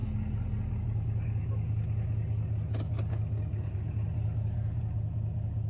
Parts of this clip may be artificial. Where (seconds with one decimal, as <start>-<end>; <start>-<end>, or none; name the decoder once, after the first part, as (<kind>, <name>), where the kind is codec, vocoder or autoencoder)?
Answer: none